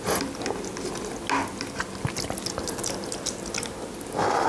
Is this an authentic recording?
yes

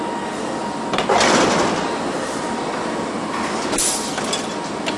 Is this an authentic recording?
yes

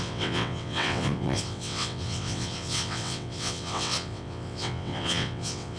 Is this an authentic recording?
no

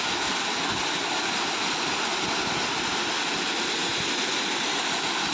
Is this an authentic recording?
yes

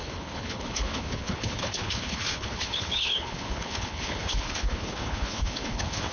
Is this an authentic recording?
no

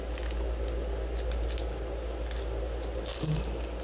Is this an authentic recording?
yes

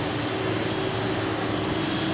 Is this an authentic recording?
yes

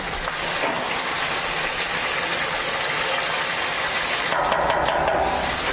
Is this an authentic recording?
yes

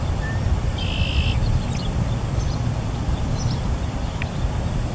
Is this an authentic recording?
yes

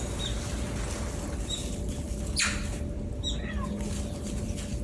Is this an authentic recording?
yes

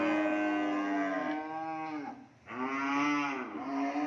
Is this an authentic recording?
yes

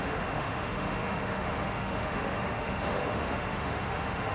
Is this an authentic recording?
no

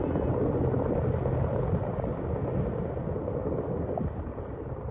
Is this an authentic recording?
yes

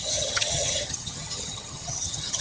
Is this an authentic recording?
no